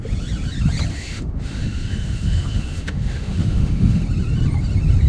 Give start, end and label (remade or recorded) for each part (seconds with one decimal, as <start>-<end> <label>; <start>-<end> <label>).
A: 0.0-0.9 recorded; 0.9-4.0 remade; 4.0-5.1 recorded